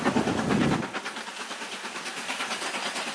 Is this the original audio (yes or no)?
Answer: yes